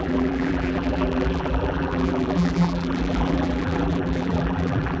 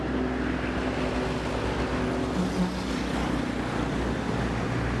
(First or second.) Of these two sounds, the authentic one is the second